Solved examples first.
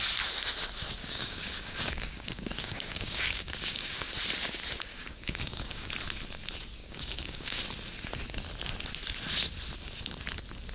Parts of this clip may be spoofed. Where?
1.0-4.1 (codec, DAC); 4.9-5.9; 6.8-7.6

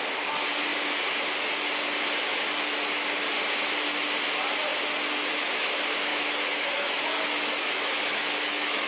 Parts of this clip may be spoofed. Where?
6.1-8.9 (autoencoder, DAC-VAE)